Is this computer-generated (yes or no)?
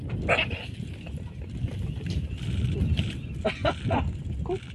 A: no